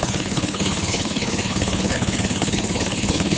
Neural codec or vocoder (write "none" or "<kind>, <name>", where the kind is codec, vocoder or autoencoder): codec, HILCodec